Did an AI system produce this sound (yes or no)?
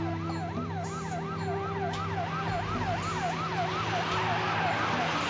no